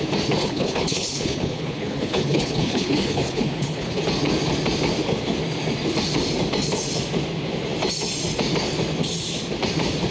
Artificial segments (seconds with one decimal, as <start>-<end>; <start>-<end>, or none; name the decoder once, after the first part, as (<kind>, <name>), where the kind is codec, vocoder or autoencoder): 0.4-4.0 (codec, HILCodec)